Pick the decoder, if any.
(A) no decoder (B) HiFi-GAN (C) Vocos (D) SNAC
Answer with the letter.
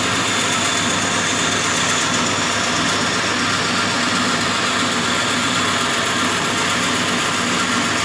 A